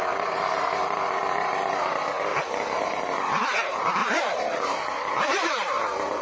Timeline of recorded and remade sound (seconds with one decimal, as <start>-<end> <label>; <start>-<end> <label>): 0.0-2.3 recorded; 2.3-3.0 remade; 3.0-4.0 recorded; 4.0-5.8 remade; 5.8-6.2 recorded